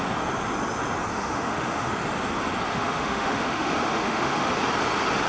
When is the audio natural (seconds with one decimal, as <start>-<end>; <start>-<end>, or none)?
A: 0.0-1.1; 1.9-2.7; 4.5-5.3